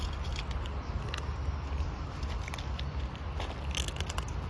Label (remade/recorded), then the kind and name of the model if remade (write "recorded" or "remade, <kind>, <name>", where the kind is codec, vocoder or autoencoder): recorded